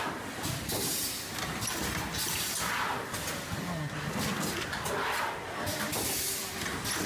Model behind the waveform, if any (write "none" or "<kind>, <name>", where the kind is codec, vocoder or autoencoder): none